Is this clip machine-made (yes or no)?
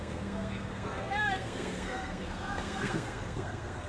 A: yes